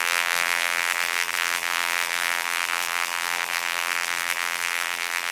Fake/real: fake